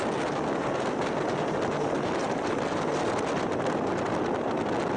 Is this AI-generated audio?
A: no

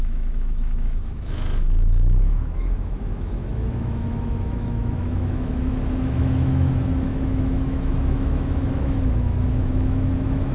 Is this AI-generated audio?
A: yes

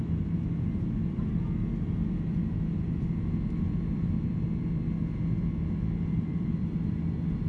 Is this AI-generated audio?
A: no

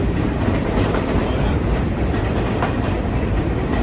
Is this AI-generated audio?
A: yes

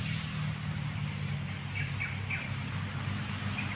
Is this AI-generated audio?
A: no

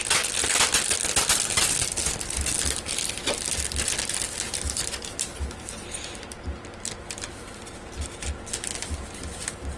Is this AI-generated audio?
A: no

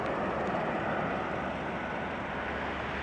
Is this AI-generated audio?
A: no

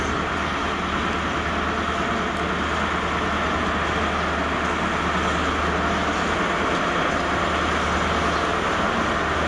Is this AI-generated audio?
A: no